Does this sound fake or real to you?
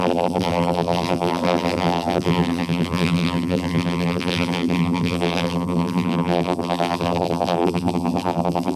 fake